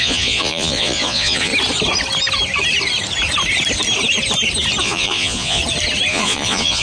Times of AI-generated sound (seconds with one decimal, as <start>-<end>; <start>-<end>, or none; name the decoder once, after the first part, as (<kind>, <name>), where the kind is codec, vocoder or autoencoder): 0.0-1.5 (vocoder, Vocos); 4.8-5.6; 6.1-6.8